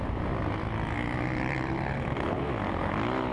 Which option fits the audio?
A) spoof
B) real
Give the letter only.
B